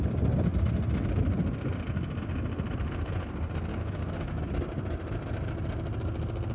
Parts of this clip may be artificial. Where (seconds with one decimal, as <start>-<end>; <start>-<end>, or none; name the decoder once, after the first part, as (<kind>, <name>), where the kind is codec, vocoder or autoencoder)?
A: 3.7-4.4 (codec, DAC)